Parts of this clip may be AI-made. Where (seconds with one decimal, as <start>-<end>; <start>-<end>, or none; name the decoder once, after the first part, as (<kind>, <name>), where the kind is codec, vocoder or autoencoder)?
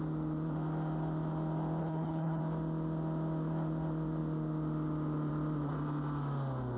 1.8-2.4 (codec, HILCodec)